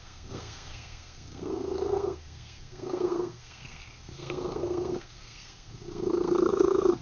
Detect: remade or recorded remade